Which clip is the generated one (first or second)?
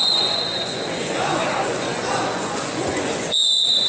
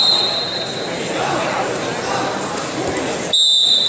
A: first